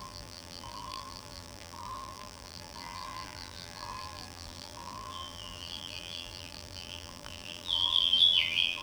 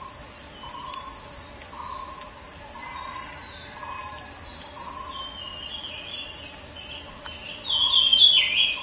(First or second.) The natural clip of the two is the second